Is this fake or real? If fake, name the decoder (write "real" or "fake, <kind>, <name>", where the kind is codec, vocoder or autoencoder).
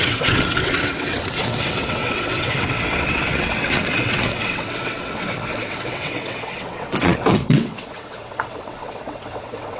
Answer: fake, vocoder, WaveNeXt